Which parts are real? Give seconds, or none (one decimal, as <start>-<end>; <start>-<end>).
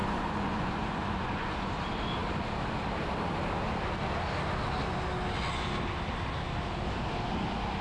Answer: 1.7-7.8